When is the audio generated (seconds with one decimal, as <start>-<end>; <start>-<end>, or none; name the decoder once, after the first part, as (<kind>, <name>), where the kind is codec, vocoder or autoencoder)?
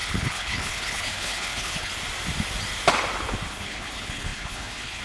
0.0-1.9 (codec, HILCodec); 3.5-5.0